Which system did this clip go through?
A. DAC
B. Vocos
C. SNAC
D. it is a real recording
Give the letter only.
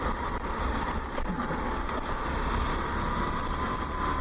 D